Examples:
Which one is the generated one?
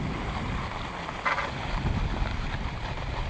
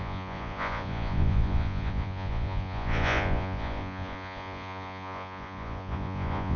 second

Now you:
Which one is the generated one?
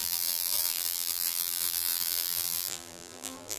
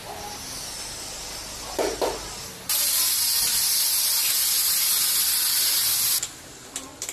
first